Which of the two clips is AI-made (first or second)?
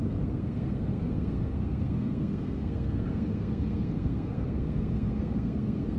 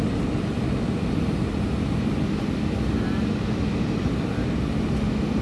first